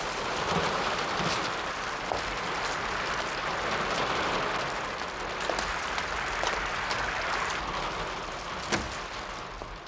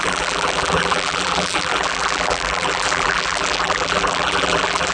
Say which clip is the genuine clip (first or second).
first